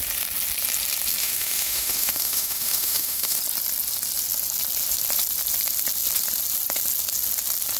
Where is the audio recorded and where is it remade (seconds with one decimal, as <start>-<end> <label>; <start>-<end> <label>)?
0.0-1.2 recorded; 1.2-3.4 remade; 3.4-7.8 recorded